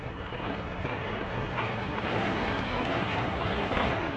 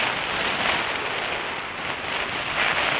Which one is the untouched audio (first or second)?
second